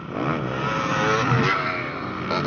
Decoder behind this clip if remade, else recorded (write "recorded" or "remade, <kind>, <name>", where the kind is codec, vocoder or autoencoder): recorded